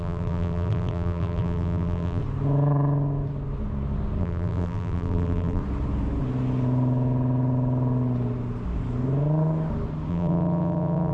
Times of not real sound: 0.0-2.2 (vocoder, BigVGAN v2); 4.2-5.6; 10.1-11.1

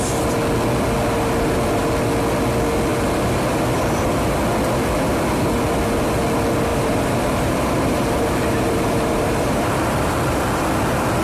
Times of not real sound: 6.7-10.4 (vocoder, BigVGAN v2)

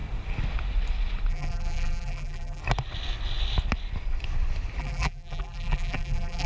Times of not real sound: 1.3-2.6 (vocoder, BigVGAN v2); 4.8-6.5

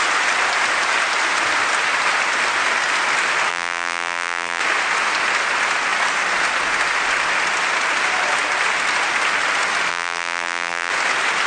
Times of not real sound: 3.5-4.6 (vocoder, BigVGAN v2); 9.9-10.9

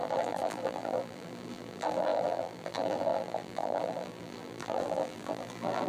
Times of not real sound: 0.0-5.9 (vocoder, BigVGAN v2)

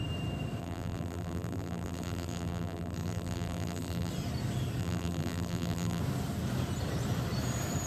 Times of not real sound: 0.6-4.1 (vocoder, BigVGAN v2); 4.8-6.0

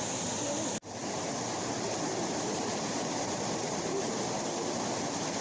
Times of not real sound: 1.0-4.2 (vocoder, BigVGAN v2)